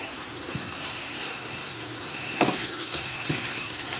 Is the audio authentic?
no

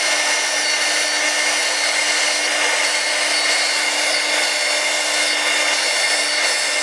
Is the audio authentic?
yes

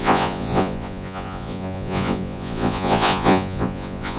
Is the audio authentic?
no